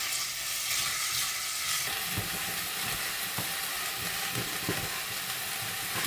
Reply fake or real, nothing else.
real